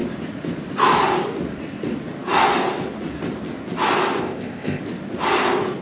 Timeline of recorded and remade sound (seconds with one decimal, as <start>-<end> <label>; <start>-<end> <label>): 0.0-4.2 recorded; 4.2-4.8 remade; 4.8-5.8 recorded